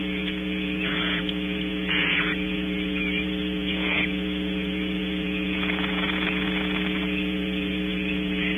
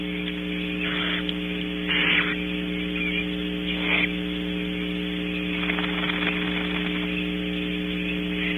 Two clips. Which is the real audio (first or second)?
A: second